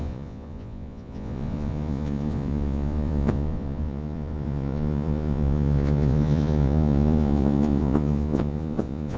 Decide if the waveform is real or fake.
fake